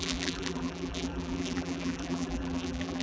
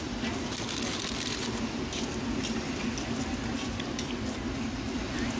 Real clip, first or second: second